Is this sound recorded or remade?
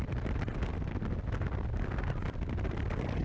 recorded